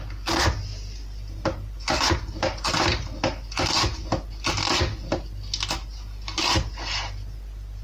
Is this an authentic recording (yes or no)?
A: yes